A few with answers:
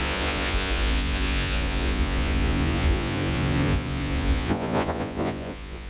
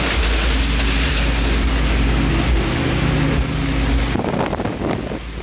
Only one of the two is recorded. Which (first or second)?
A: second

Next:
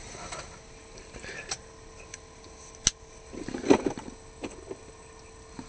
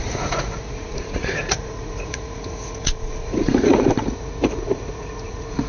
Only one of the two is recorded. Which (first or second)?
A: first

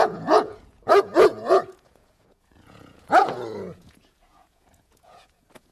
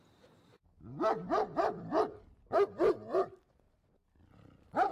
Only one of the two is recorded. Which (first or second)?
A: second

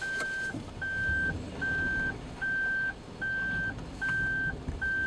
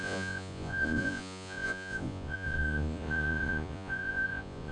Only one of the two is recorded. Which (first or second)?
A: first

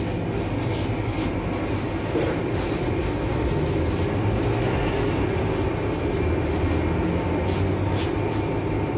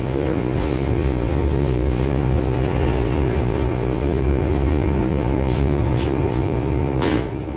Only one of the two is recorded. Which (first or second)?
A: first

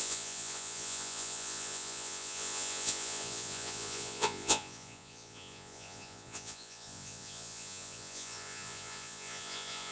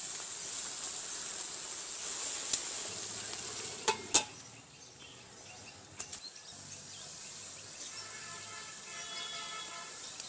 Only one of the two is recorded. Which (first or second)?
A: second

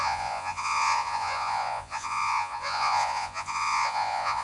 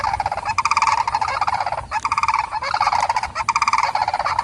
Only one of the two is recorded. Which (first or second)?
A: second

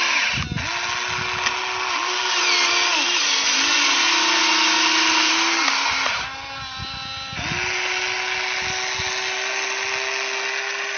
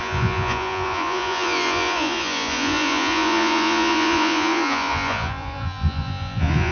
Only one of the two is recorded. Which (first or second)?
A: first